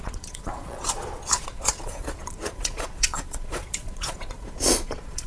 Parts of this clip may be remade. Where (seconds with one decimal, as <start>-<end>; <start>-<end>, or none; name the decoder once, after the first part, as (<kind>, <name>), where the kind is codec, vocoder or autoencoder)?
0.0-5.3 (vocoder, Vocos)